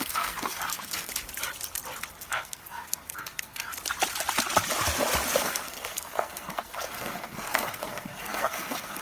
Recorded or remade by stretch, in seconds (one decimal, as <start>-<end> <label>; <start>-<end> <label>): 0.0-1.1 remade; 1.1-2.2 recorded; 2.2-3.7 remade; 3.7-5.4 recorded; 5.4-9.0 remade